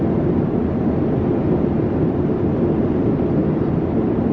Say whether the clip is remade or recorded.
recorded